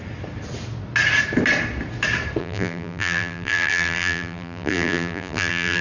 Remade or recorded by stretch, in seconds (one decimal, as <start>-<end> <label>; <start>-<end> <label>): 0.0-2.4 recorded; 2.4-5.8 remade